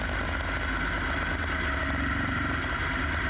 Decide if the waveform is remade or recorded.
recorded